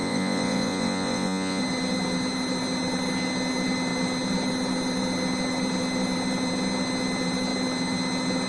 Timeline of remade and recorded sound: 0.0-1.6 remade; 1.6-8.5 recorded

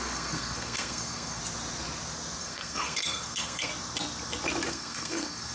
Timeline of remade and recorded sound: 0.0-1.4 remade; 1.4-2.4 recorded; 2.4-3.7 remade; 3.7-4.7 recorded; 4.7-5.5 remade

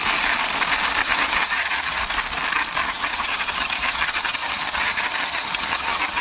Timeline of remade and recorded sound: 0.0-1.0 recorded; 1.0-2.0 remade; 2.0-2.8 recorded; 2.8-6.2 remade